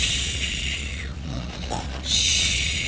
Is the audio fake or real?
fake